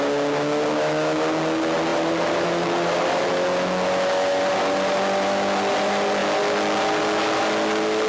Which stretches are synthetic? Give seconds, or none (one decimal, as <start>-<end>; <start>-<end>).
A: 1.9-3.3